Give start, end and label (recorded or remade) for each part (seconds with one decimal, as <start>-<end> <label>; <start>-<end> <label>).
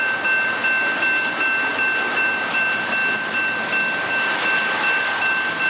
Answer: 0.0-5.7 recorded